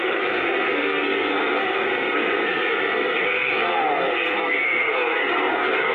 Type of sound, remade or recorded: remade